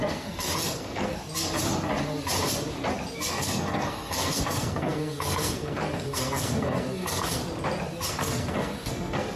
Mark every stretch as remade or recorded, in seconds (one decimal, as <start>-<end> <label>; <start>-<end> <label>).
0.0-1.2 remade; 1.2-3.3 recorded; 3.3-7.4 remade; 7.4-8.1 recorded; 8.1-9.4 remade

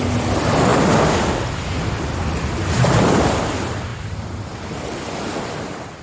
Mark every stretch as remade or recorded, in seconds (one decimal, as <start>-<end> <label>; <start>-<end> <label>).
0.0-6.0 recorded

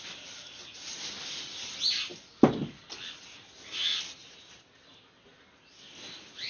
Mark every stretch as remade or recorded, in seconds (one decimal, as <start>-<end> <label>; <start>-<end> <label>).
0.0-6.5 recorded

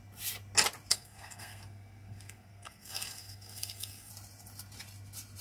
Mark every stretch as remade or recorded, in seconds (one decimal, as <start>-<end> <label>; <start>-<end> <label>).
0.0-0.9 recorded; 0.9-4.1 remade; 4.1-5.4 recorded